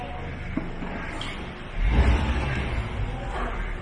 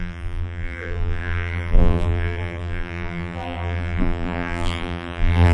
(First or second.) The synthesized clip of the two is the second